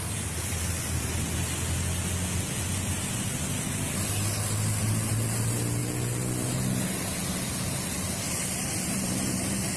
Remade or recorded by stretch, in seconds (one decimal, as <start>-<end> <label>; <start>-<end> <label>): 0.0-9.8 recorded